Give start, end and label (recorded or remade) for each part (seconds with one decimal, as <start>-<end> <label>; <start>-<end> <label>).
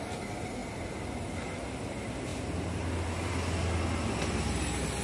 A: 0.0-5.0 recorded